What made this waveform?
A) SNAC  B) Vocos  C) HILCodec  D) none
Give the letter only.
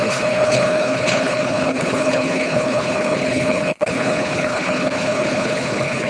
C